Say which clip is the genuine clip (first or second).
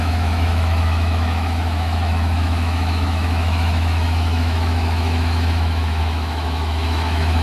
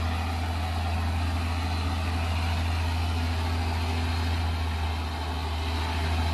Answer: second